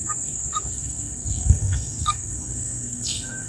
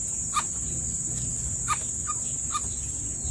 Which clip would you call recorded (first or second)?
second